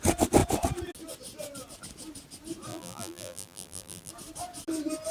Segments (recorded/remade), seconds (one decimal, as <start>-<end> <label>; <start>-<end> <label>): 0.0-2.7 recorded; 2.7-4.1 remade; 4.1-5.1 recorded